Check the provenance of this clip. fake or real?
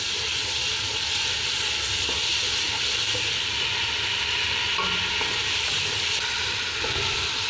real